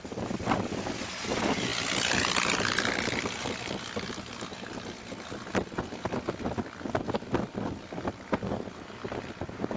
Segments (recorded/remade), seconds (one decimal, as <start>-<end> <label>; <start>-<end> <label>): 0.0-9.8 recorded